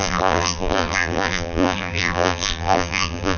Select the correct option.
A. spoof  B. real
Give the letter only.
A